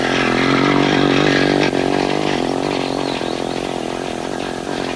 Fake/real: real